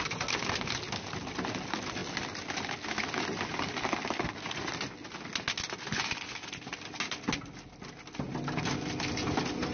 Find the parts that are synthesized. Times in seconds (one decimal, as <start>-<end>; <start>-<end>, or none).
none